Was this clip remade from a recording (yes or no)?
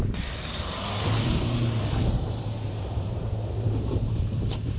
yes